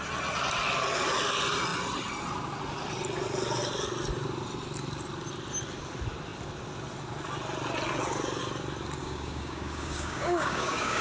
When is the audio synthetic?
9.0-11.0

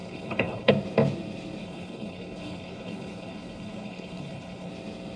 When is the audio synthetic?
0.0-0.7; 1.6-4.7

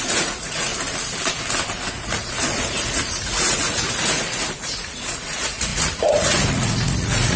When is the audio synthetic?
0.0-0.7; 1.9-7.4

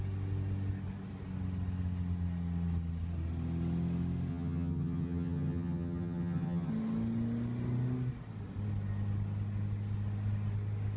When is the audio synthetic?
4.3-6.7

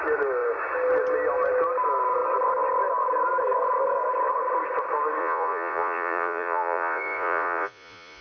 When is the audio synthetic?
5.2-8.2